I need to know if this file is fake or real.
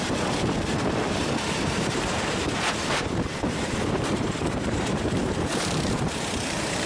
fake